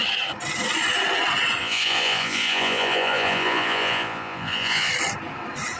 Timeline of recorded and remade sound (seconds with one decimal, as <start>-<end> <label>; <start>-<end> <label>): 0.0-1.6 recorded; 1.6-4.9 remade; 4.9-5.8 recorded